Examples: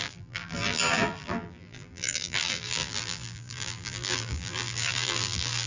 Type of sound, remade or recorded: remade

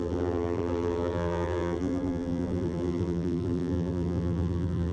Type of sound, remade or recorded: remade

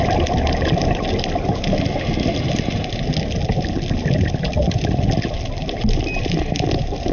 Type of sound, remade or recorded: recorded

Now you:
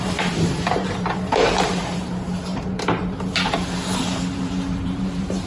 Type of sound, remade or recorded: remade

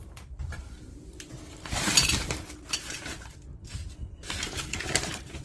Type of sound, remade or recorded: remade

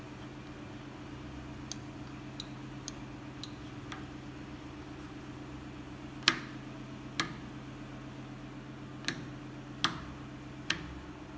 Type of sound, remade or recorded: recorded